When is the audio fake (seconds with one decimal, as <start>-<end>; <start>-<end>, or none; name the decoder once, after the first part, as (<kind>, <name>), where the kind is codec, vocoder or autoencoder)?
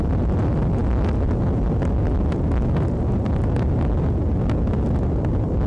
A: none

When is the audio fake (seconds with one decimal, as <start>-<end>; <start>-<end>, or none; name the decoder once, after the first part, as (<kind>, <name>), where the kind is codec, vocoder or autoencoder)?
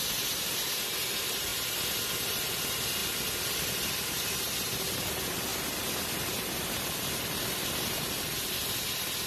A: none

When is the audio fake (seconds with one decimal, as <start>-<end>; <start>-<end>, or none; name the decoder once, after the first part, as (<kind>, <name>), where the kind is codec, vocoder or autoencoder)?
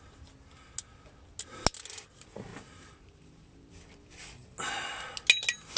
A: 2.5-3.7 (vocoder, BigVGAN v2)